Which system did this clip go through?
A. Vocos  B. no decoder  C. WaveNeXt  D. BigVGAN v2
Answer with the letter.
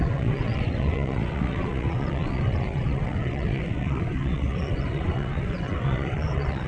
C